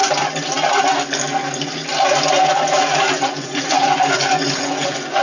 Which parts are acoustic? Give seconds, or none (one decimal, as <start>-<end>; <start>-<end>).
0.0-3.1